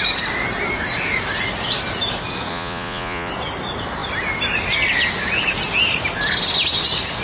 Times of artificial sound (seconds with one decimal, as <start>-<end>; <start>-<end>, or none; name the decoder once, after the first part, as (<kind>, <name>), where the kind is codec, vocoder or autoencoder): 2.5-3.3 (vocoder, Vocos)